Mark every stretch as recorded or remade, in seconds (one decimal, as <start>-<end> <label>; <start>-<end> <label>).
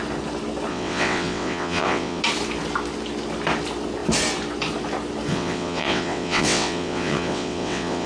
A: 0.0-0.7 recorded; 0.7-2.2 remade; 2.2-5.3 recorded; 5.3-8.1 remade